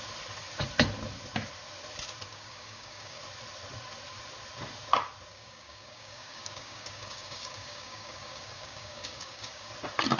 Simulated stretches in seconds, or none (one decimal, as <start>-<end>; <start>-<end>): 2.3-3.2; 5.3-9.7